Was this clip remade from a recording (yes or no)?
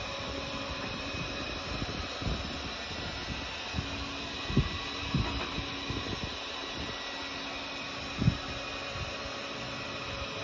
no